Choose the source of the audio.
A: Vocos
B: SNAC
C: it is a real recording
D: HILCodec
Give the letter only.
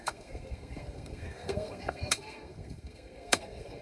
B